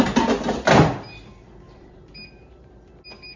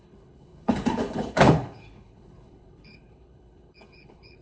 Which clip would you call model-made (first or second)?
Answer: second